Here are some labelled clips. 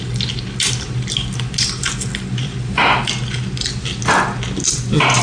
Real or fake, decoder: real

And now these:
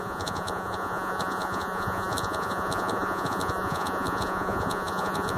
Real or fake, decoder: fake, vocoder, Vocos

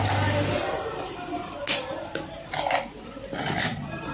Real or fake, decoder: real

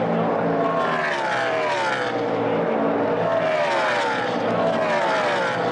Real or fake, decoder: real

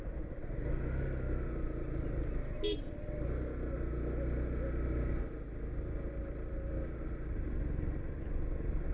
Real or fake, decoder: real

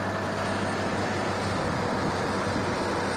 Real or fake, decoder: real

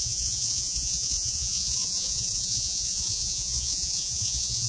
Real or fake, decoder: fake, vocoder, Vocos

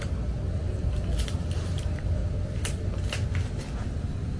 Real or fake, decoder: real